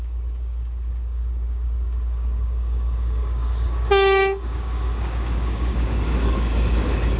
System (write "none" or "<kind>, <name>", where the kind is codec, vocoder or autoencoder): codec, DAC